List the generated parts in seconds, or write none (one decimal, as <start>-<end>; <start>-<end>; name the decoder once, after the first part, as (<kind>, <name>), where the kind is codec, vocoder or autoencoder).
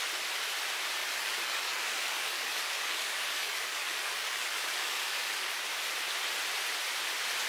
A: 1.0-5.5 (codec, DAC)